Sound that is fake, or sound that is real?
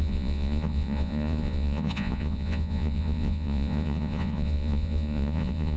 fake